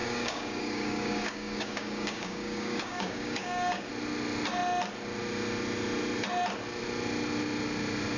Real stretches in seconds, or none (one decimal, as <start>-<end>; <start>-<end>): 3.9-8.2